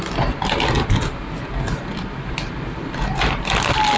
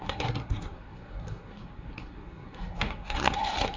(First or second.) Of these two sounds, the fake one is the second